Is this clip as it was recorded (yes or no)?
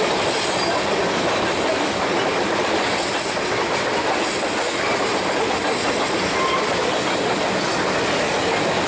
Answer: yes